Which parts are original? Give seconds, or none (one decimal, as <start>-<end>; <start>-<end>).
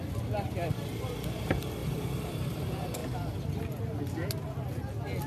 0.0-1.8; 2.5-5.3